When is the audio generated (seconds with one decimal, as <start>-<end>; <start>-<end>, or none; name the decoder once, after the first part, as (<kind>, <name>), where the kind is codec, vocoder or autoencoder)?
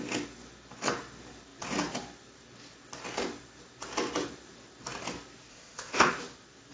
5.5-6.1 (codec, ZipCodec)